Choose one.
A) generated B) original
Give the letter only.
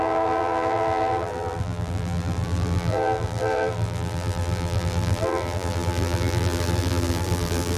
A